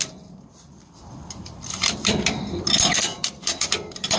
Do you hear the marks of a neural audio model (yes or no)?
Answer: yes